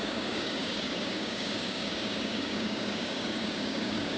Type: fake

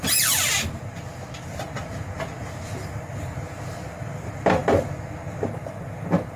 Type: real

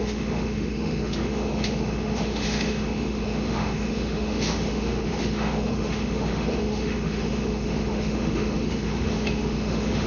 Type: fake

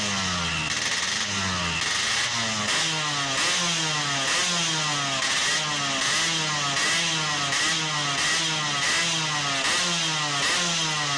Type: real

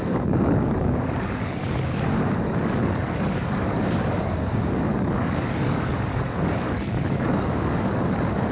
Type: fake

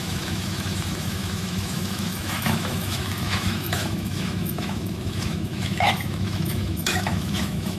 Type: fake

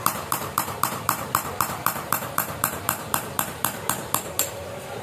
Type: fake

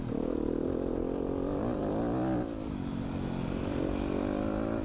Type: real